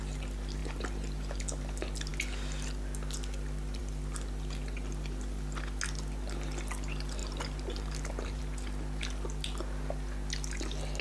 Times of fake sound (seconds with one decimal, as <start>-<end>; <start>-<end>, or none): 0.6-1.4; 7.2-8.4